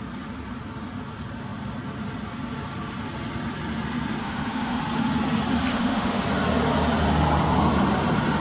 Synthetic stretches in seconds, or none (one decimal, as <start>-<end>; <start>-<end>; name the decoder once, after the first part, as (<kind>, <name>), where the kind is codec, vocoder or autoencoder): 4.2-4.8 (autoencoder, DAC-VAE); 5.7-6.2